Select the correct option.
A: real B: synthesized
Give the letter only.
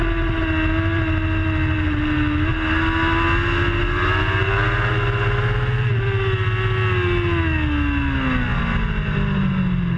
A